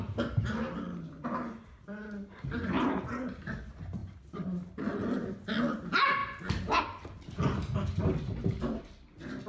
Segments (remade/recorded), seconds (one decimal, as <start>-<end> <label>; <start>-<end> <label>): 0.0-4.0 recorded; 4.0-4.8 remade; 4.8-9.5 recorded